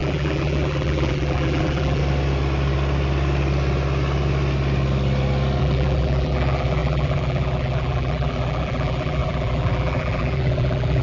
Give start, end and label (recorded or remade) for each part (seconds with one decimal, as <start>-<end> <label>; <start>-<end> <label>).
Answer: 0.0-2.0 remade; 2.0-5.6 recorded; 5.6-11.0 remade